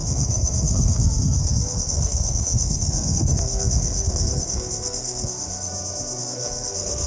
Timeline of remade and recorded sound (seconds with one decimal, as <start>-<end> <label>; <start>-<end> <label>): 0.0-5.7 remade; 5.7-6.2 recorded; 6.2-7.1 remade